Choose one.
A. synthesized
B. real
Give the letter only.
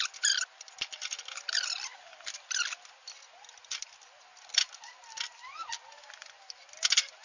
B